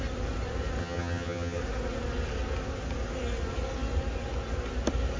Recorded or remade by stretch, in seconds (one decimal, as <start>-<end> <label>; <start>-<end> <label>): 0.0-0.8 recorded; 0.8-1.6 remade; 1.6-5.2 recorded